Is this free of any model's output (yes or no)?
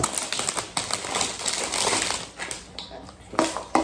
yes